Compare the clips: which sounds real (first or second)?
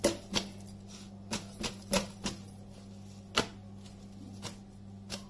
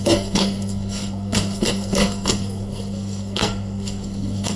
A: first